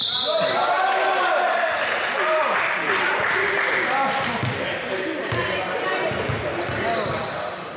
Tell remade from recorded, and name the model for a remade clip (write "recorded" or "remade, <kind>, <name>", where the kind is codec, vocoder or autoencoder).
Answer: recorded